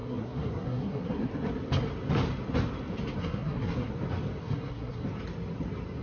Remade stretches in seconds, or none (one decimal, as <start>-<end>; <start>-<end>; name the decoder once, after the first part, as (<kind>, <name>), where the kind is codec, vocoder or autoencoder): 0.0-1.3 (codec, SNAC); 3.2-3.9; 4.4-5.0